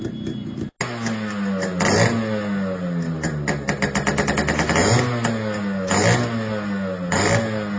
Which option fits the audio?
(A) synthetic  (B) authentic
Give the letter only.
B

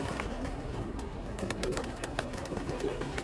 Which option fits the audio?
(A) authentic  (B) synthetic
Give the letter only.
B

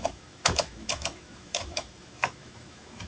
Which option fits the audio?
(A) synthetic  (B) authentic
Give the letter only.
A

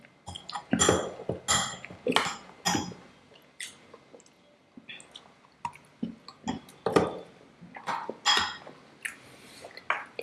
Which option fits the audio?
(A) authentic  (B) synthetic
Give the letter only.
A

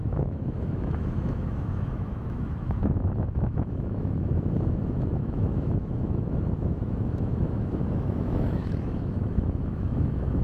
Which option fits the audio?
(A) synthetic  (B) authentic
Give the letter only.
A